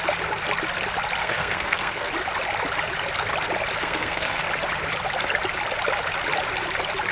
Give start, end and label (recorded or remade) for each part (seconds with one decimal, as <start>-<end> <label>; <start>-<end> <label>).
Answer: 0.0-1.2 recorded; 1.2-2.1 remade; 2.1-3.8 recorded; 3.8-4.4 remade; 4.4-7.1 recorded